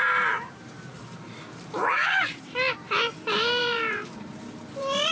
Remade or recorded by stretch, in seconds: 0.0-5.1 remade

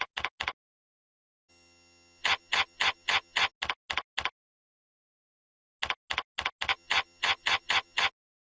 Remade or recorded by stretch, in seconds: 0.0-1.5 recorded; 1.5-3.5 remade; 3.5-6.7 recorded; 6.7-8.1 remade; 8.1-8.6 recorded

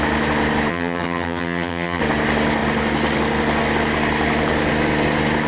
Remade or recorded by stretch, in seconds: 0.0-0.7 recorded; 0.7-2.0 remade; 2.0-5.5 recorded

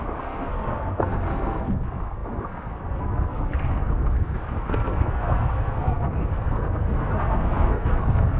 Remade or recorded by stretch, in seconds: 0.0-8.4 remade

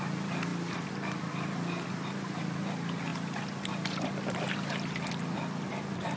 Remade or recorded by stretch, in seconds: 0.0-6.2 remade

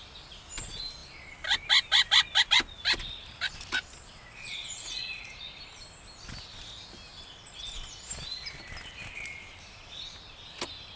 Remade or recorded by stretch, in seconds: 0.0-4.1 recorded; 4.1-5.4 remade; 5.4-11.0 recorded